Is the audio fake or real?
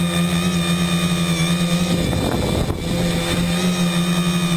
real